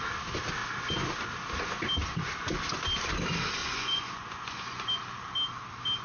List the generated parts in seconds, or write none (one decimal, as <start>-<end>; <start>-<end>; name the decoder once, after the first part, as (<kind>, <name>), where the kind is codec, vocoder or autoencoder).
3.6-4.9 (vocoder, Vocos)